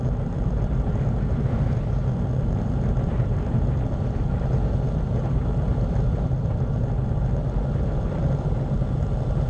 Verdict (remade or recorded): recorded